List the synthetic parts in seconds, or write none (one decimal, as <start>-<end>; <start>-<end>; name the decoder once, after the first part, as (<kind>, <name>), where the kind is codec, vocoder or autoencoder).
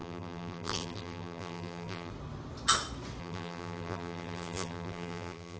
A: 0.0-2.1 (vocoder, BigVGAN v2); 3.2-5.6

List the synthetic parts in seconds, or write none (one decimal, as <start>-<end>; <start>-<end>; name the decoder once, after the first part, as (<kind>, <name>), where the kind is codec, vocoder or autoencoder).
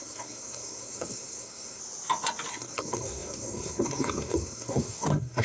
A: 0.0-1.8 (codec, SNAC); 2.5-5.4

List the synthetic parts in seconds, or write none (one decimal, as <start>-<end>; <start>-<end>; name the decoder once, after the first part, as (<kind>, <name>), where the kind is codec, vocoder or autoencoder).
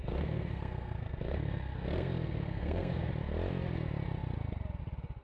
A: 0.0-3.1 (codec, SNAC)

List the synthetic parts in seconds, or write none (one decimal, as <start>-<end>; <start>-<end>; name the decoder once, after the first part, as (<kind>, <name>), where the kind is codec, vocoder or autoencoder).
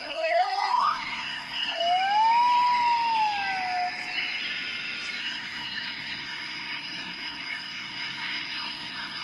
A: 0.0-1.8 (codec, SNAC); 5.2-9.2